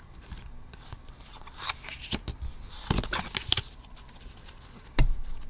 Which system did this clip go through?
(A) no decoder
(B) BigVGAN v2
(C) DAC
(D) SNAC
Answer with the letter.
A